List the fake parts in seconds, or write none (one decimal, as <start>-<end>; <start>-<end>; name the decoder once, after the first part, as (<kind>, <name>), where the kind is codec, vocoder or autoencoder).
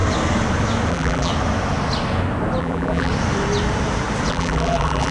0.9-1.3 (vocoder, BigVGAN v2); 2.6-3.1; 4.3-5.1